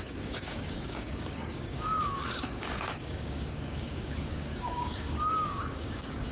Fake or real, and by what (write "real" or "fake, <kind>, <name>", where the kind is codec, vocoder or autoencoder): fake, codec, DAC